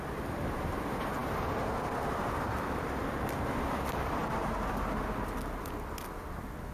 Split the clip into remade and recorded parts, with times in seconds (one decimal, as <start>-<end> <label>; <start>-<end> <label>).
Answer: 0.0-6.7 recorded

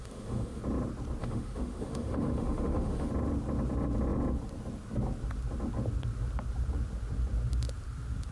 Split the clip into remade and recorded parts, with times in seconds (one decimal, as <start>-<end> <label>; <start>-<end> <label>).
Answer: 0.0-0.6 remade; 0.6-1.2 recorded; 1.2-3.1 remade; 3.1-8.3 recorded

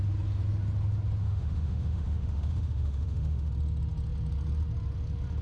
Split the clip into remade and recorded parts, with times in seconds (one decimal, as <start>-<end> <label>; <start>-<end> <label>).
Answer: 0.0-1.2 recorded; 1.2-3.5 remade; 3.5-5.4 recorded

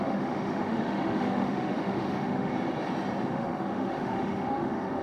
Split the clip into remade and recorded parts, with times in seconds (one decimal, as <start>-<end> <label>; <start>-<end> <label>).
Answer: 0.0-2.5 remade; 2.5-3.3 recorded; 3.3-5.0 remade

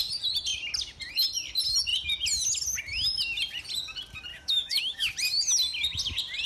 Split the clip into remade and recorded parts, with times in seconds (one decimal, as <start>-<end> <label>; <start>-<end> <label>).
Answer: 0.0-4.3 recorded; 4.3-5.1 remade; 5.1-6.5 recorded

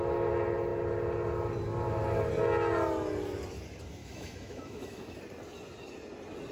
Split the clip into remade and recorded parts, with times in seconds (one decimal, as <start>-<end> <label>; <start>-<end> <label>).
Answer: 0.0-4.0 recorded; 4.0-5.2 remade; 5.2-6.5 recorded

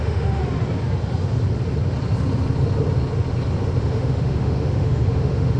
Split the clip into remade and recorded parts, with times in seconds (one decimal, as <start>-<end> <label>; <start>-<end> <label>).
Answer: 0.0-0.4 remade; 0.4-3.8 recorded; 3.8-5.6 remade